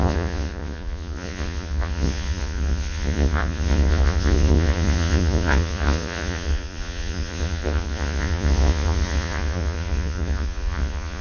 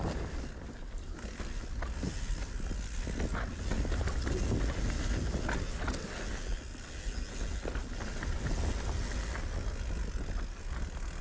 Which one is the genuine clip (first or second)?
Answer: second